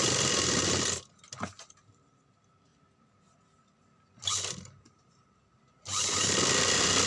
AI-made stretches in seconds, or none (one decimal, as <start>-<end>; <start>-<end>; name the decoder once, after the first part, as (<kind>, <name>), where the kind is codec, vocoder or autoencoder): none